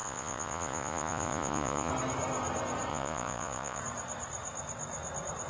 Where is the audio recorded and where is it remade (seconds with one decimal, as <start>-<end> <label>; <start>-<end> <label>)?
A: 0.0-1.9 remade; 1.9-2.9 recorded; 2.9-3.8 remade; 3.8-5.5 recorded